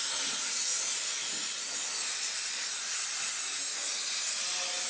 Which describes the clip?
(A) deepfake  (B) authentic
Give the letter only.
B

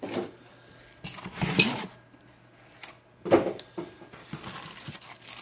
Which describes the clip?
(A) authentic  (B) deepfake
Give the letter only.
A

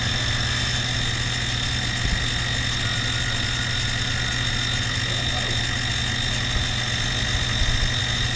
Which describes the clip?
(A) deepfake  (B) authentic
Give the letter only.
B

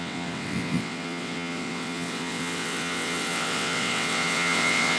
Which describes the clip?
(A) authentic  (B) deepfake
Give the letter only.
B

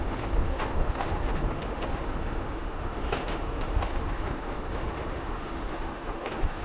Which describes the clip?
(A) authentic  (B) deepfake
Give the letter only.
B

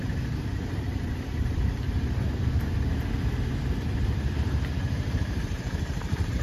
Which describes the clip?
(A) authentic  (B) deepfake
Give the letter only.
B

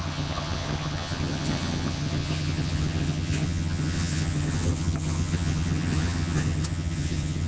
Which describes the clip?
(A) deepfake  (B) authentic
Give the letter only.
A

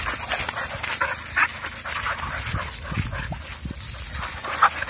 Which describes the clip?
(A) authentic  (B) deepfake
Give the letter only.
A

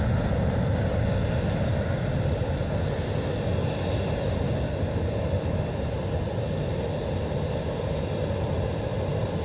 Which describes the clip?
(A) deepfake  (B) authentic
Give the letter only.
B